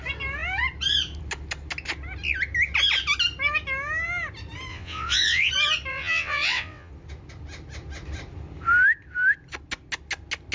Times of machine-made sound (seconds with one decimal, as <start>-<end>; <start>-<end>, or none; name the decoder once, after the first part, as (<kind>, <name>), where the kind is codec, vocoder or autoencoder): 4.7-5.5 (vocoder, WaveNeXt); 5.9-6.9